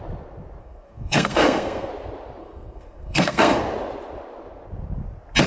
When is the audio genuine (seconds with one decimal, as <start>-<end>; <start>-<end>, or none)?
0.0-0.6; 1.9-2.4; 3.6-5.5